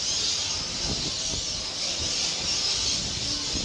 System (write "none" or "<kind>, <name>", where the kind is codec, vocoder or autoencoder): none